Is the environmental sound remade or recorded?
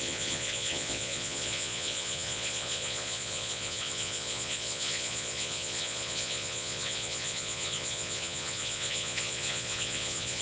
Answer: remade